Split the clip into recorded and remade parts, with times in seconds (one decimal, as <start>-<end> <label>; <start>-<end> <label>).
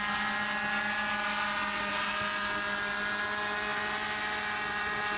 0.0-5.2 recorded